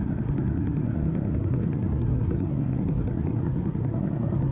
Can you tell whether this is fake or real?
fake